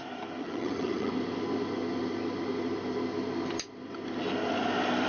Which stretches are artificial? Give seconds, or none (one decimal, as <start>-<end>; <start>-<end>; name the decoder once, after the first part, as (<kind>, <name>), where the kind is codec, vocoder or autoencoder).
0.4-1.1 (vocoder, HiFi-GAN)